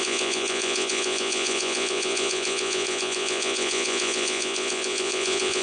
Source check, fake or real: fake